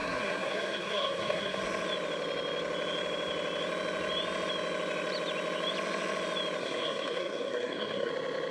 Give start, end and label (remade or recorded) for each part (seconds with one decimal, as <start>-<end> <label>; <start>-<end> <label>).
0.0-1.6 remade; 1.6-6.6 recorded; 6.6-8.1 remade; 8.1-8.5 recorded